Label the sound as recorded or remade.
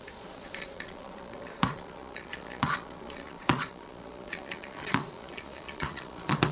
remade